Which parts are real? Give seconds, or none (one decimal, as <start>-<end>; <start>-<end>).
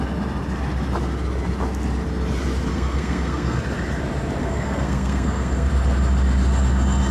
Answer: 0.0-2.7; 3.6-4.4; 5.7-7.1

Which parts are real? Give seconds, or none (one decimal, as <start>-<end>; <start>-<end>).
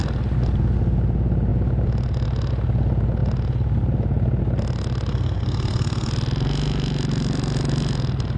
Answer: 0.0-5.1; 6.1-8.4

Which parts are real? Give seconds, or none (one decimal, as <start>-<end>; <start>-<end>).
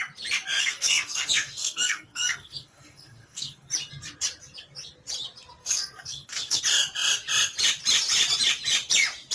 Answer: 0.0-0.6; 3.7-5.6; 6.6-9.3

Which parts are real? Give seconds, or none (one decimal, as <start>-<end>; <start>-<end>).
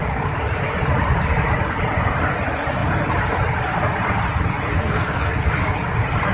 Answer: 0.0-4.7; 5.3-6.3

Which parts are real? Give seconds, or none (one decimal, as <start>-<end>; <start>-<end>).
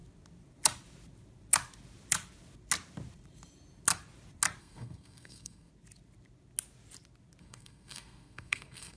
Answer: 0.0-4.6; 5.7-7.4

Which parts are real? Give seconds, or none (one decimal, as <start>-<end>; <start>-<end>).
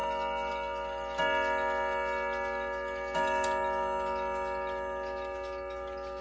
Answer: 0.0-6.2